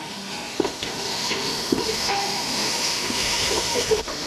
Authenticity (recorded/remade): remade